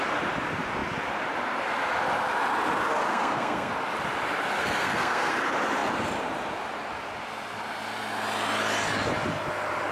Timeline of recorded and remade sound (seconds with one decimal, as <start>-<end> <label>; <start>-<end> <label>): 0.0-3.1 recorded; 3.1-3.7 remade; 3.7-4.6 recorded; 4.6-5.3 remade; 5.3-9.9 recorded